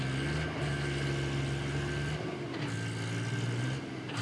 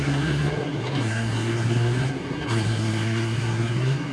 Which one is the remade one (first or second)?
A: second